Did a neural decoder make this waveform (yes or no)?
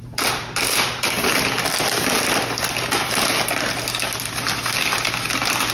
no